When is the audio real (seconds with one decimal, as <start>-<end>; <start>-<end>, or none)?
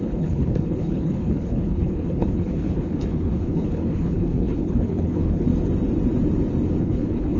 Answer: 5.5-6.8